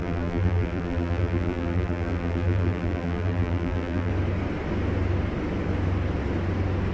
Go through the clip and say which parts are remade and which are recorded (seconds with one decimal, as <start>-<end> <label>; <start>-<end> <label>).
0.0-4.1 remade; 4.1-6.9 recorded